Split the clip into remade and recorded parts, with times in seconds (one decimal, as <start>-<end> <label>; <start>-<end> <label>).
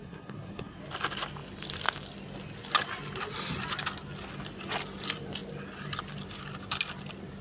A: 0.0-0.8 remade; 0.8-7.4 recorded